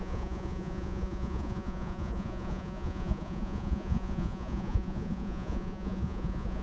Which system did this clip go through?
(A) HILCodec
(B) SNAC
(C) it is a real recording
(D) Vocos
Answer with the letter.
D